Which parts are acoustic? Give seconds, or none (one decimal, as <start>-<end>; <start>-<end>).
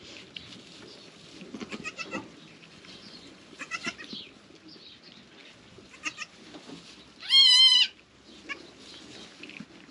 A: 0.0-2.7; 3.9-9.9